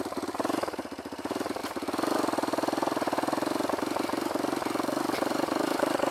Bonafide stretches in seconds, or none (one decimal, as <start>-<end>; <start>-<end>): 1.6-5.3